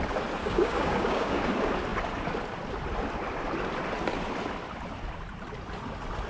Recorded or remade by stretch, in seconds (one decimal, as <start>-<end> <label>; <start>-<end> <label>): 0.0-0.4 recorded; 0.4-1.4 remade; 1.4-6.3 recorded